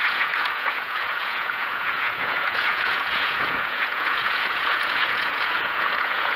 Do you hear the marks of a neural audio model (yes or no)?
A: yes